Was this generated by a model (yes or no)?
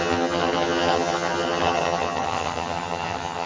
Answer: yes